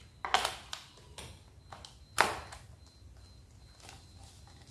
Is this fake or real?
real